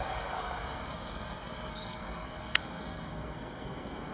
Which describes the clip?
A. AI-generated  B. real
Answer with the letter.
A